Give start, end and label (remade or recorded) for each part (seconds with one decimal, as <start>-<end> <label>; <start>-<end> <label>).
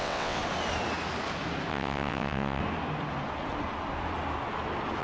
0.0-0.4 remade; 0.4-1.7 recorded; 1.7-2.6 remade; 2.6-5.0 recorded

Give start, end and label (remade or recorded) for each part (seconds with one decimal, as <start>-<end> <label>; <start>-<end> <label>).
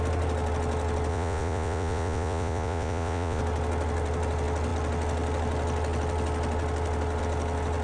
0.0-1.1 recorded; 1.1-3.4 remade; 3.4-7.8 recorded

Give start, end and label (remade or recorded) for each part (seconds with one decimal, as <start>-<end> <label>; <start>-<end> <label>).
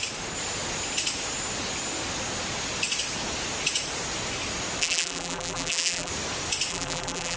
0.0-4.8 recorded; 4.8-6.1 remade; 6.1-6.7 recorded; 6.7-7.4 remade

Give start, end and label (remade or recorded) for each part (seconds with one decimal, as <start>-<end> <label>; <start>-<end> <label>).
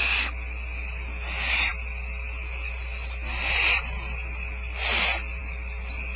0.0-6.2 recorded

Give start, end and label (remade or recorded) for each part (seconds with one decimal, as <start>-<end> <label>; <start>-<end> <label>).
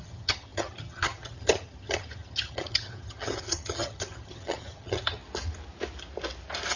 0.0-5.2 remade; 5.2-6.8 recorded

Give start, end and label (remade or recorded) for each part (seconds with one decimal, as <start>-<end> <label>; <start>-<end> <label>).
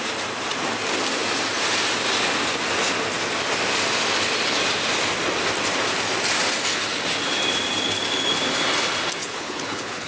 0.0-9.2 recorded; 9.2-10.1 remade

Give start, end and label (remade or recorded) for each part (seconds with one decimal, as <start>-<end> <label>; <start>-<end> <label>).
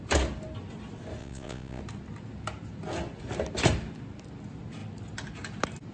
0.0-1.2 recorded; 1.2-1.8 remade; 1.8-5.9 recorded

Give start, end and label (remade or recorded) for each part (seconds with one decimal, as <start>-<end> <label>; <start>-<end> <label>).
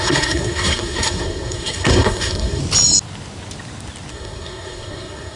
0.0-2.6 remade; 2.6-4.1 recorded; 4.1-5.4 remade